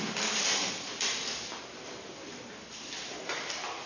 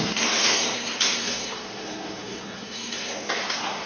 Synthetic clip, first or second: second